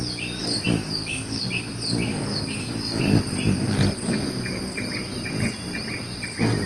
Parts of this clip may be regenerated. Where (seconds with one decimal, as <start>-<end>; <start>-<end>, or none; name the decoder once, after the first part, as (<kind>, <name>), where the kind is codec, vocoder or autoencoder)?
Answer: 0.4-1.4 (codec, DAC); 2.1-3.0